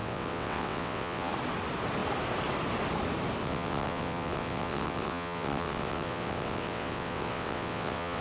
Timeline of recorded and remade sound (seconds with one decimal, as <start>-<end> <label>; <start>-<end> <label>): 0.0-1.3 remade; 1.3-3.4 recorded; 3.4-8.2 remade